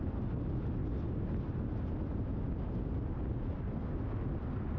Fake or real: real